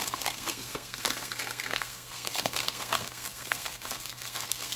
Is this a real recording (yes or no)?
no